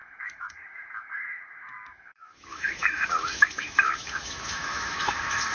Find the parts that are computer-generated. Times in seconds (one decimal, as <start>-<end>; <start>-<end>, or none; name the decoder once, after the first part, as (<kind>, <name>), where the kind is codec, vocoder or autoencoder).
0.0-5.5 (autoencoder, DAC-VAE)